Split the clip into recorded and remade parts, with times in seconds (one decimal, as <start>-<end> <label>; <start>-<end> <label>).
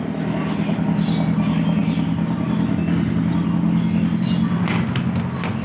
0.0-5.6 recorded